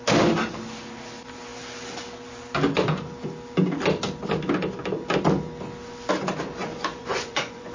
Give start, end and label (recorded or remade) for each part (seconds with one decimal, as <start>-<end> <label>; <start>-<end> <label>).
0.0-6.7 recorded; 6.7-7.7 remade